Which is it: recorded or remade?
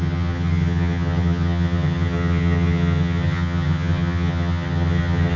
remade